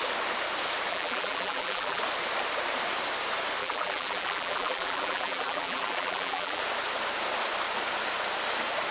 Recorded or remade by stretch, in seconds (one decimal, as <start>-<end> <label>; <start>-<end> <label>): 0.0-0.9 recorded; 0.9-2.0 remade; 2.0-3.6 recorded; 3.6-6.6 remade; 6.6-8.9 recorded